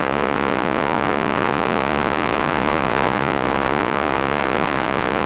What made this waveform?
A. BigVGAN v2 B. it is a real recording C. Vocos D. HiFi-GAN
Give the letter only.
C